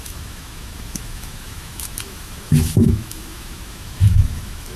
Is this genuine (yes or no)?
no